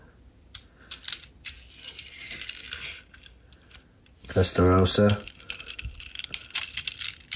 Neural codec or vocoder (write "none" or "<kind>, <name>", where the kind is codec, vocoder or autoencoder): none